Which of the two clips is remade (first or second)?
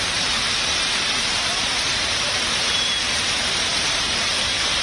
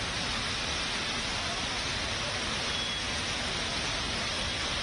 first